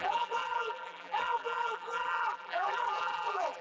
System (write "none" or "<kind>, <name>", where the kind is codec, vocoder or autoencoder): vocoder, BigVGAN v2